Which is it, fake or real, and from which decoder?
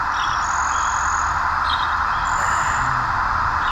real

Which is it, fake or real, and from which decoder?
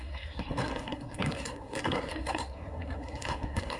fake, codec, SNAC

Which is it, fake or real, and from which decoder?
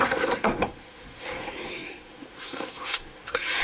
fake, codec, SNAC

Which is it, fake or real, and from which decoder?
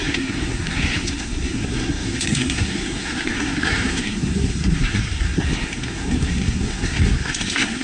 fake, codec, SNAC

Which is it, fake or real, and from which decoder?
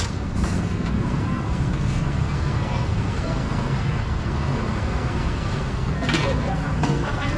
fake, codec, SNAC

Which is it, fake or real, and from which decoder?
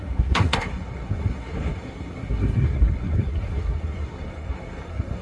fake, codec, SNAC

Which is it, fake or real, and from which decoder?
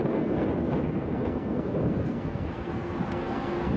fake, codec, SNAC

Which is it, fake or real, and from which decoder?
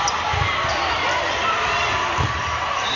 real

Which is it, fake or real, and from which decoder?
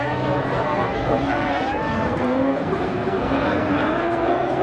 fake, codec, SNAC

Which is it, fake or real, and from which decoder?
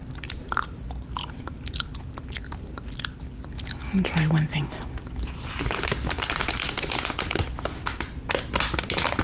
real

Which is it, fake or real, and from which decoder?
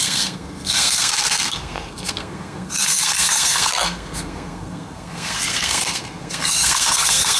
fake, codec, SNAC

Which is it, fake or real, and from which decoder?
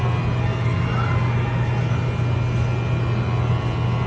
real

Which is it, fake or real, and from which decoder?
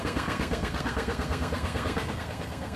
fake, codec, SNAC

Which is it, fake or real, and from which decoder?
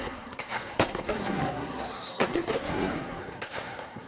fake, codec, SNAC